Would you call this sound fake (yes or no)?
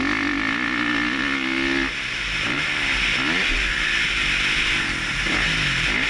no